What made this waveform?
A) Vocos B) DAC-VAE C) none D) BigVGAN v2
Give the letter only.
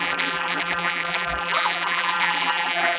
D